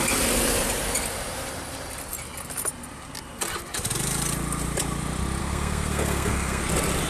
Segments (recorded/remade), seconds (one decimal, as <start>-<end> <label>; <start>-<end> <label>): 0.0-5.4 recorded; 5.4-6.6 remade; 6.6-7.1 recorded